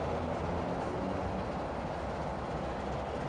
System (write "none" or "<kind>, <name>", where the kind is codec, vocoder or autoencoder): none